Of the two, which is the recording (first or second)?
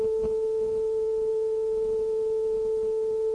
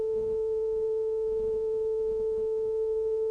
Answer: first